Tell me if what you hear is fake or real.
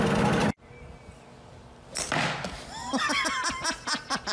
real